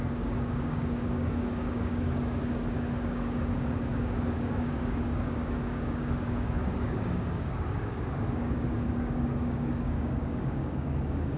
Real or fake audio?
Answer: fake